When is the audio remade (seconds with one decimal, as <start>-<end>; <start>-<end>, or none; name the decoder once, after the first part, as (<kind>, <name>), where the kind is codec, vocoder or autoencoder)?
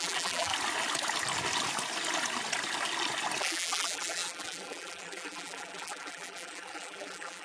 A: 0.0-0.5 (vocoder, BigVGAN v2); 3.4-7.4